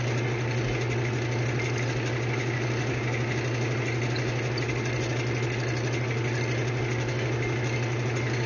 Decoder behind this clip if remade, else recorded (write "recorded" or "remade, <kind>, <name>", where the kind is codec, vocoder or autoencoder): recorded